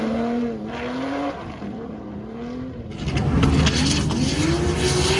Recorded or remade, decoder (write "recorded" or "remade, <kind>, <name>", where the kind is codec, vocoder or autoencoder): recorded